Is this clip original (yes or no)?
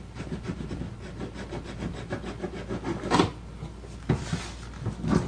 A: yes